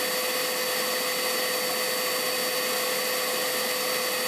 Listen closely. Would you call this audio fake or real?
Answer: real